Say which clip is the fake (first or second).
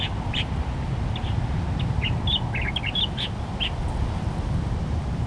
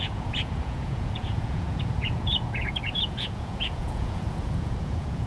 second